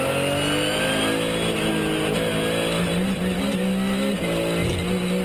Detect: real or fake real